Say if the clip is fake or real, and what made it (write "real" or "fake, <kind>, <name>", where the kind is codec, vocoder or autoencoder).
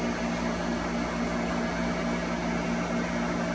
real